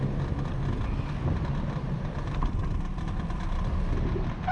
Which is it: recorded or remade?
recorded